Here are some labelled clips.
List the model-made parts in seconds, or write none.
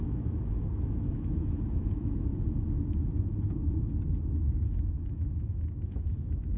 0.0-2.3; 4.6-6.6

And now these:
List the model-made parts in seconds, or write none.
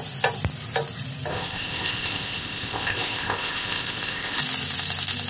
1.3-4.4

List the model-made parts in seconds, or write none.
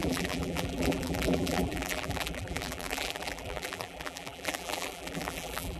0.0-5.8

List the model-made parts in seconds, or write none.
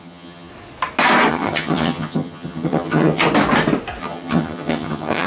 0.0-0.5; 1.3-3.2; 4.0-5.3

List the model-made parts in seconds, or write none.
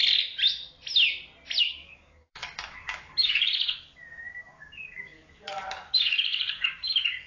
1.6-7.3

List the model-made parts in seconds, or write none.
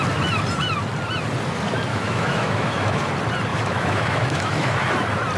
1.9-3.1; 3.5-4.9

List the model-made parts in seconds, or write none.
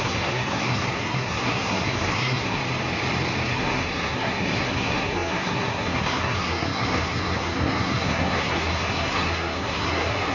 0.0-2.6; 3.5-10.3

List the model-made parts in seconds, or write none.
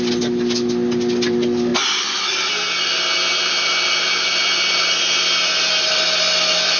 none